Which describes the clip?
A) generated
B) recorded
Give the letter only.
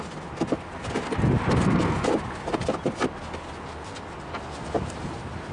B